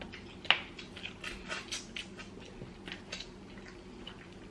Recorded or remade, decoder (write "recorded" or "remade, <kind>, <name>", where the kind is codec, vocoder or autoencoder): recorded